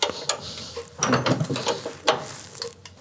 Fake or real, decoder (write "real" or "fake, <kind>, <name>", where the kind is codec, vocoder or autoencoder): real